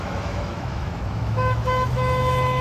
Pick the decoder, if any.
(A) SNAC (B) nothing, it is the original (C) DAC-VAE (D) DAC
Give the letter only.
C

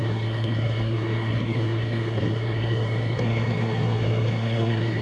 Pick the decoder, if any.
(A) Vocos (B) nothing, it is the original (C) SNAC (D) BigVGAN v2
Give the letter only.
C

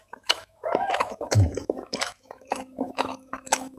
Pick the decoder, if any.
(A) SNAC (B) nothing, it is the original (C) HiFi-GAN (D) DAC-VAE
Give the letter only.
D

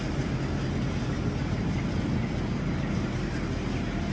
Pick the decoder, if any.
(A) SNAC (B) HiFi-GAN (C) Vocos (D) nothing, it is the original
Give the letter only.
D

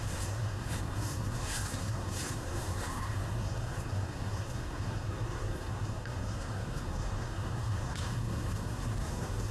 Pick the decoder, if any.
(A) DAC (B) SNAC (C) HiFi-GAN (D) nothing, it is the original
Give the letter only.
B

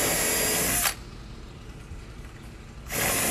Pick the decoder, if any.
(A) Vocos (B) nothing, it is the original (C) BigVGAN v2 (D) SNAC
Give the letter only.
B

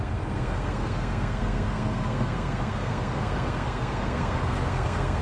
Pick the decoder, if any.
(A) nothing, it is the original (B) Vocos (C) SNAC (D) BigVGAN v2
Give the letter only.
C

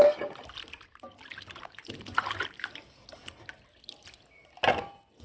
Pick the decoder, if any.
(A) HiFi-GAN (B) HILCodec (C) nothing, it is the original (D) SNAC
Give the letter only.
C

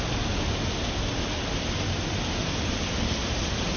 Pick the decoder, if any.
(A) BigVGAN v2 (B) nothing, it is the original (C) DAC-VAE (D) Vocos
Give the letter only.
B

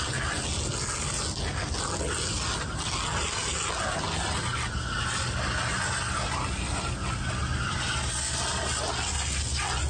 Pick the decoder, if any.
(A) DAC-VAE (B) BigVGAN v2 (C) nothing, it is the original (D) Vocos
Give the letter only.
C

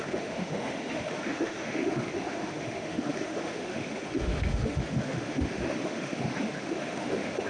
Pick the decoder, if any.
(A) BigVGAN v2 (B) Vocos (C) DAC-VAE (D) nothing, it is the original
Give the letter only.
C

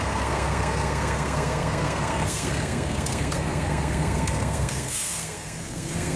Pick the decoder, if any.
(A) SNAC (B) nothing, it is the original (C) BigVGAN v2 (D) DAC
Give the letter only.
A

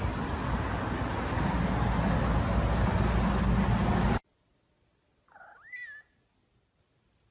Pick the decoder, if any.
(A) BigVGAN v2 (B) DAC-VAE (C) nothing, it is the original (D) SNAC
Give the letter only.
C